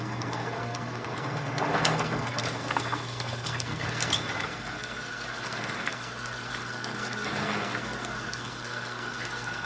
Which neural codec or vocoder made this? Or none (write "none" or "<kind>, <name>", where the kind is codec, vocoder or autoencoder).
codec, SNAC